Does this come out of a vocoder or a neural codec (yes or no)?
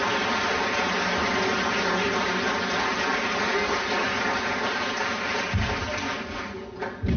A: no